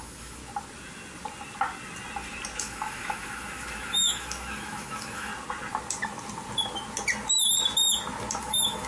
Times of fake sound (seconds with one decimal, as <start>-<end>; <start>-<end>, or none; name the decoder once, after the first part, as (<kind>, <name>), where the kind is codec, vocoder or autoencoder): 0.0-0.4 (autoencoder, DAC-VAE); 2.6-5.3; 8.4-8.9